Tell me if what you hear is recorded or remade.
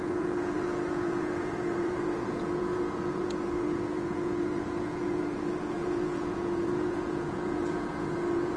remade